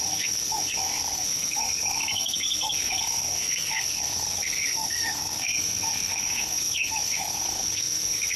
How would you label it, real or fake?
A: fake